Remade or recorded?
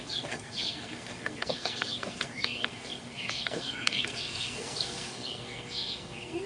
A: remade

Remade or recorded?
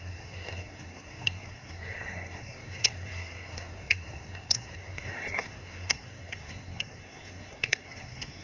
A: remade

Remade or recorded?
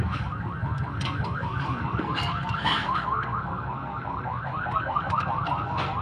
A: remade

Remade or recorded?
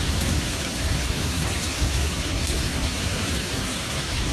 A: remade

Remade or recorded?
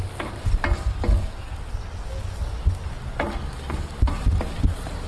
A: recorded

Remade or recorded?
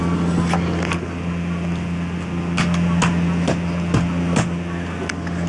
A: recorded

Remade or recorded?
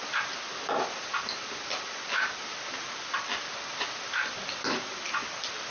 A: recorded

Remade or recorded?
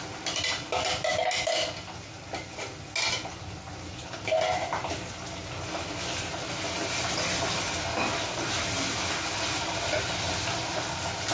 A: recorded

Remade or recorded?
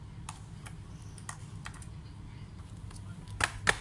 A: recorded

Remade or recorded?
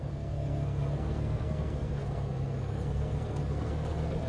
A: remade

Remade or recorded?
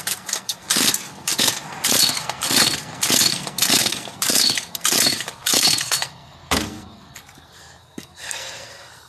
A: remade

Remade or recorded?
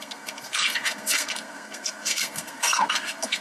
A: remade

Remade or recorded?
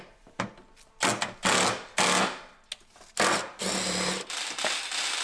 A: recorded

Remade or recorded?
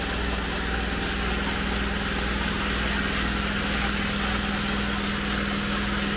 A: recorded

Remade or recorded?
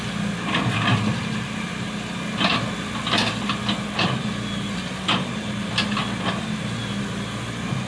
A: recorded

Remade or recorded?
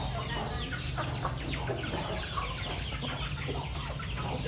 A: recorded